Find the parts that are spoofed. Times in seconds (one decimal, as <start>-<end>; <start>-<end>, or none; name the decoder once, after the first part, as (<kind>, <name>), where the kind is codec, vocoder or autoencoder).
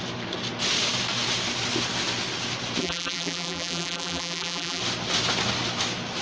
2.8-4.8 (vocoder, BigVGAN v2)